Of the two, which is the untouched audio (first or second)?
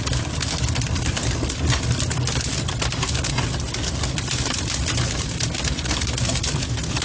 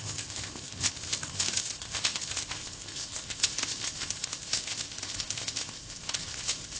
first